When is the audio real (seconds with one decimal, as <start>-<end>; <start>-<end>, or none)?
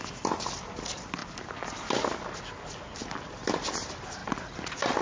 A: 0.0-5.0